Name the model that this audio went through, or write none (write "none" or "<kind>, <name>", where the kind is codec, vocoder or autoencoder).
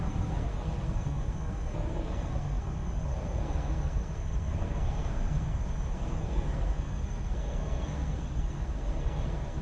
codec, SNAC